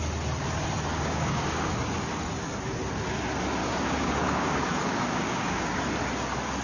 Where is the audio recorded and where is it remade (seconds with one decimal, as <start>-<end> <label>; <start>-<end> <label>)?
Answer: 0.0-0.9 recorded; 0.9-1.7 remade; 1.7-3.6 recorded; 3.6-5.8 remade; 5.8-6.6 recorded

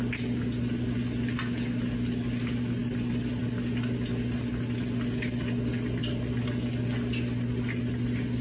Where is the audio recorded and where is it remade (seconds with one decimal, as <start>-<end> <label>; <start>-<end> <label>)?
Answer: 0.0-8.4 recorded

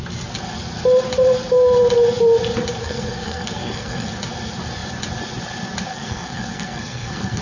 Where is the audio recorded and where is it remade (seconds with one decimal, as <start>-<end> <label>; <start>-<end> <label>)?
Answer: 0.0-2.8 recorded; 2.8-4.1 remade; 4.1-5.9 recorded; 5.9-7.4 remade

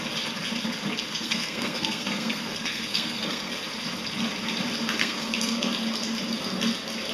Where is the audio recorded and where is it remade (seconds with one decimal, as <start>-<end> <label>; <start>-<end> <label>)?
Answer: 0.0-1.1 recorded; 1.1-3.6 remade; 3.6-5.0 recorded; 5.0-5.7 remade; 5.7-7.1 recorded